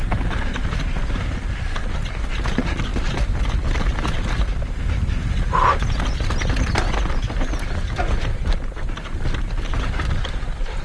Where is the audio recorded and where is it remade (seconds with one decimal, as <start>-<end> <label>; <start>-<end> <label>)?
0.0-8.3 recorded; 8.3-10.3 remade; 10.3-10.8 recorded